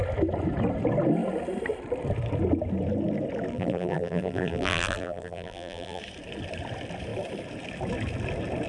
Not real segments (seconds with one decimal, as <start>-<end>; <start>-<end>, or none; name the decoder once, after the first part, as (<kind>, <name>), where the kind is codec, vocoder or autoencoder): 3.5-6.0 (vocoder, BigVGAN v2)